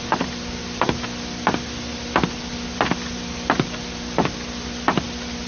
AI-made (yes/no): no